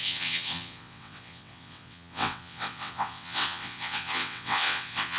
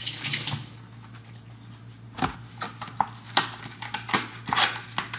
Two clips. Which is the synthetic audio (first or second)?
first